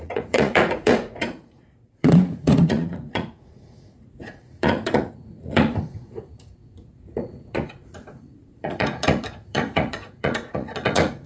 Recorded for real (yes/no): no